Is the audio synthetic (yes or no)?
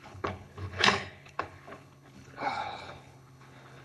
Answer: yes